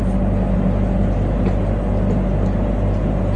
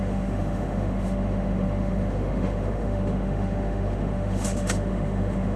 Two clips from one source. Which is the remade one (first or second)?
second